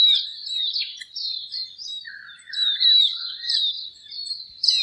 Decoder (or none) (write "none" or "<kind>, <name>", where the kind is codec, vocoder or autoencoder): vocoder, BigVGAN v2